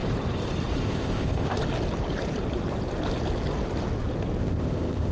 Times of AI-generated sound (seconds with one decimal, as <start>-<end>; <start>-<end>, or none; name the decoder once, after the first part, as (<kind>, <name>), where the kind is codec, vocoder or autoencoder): 0.8-1.6 (codec, ZipCodec); 4.4-5.1